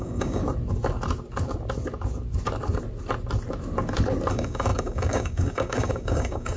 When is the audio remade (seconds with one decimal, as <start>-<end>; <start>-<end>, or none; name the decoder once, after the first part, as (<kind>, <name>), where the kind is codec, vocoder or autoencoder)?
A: 0.0-0.4 (codec, DAC); 4.3-6.6